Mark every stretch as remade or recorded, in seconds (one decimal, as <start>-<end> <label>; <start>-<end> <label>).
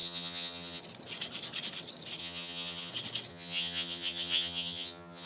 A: 0.0-0.8 remade; 0.8-2.2 recorded; 2.2-2.9 remade; 2.9-3.3 recorded; 3.3-5.3 remade